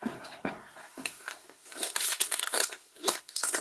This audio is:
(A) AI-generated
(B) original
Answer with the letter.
A